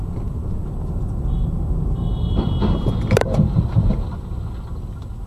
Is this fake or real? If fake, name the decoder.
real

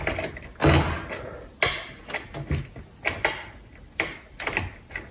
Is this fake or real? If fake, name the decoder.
real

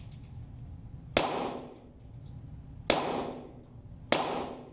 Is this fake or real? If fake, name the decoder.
real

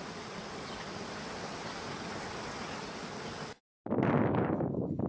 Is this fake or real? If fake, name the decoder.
real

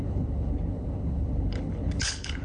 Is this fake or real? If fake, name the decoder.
fake, codec, HILCodec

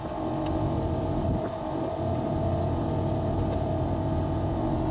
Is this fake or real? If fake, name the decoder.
real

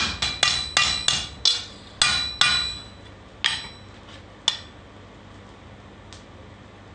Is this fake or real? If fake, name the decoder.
real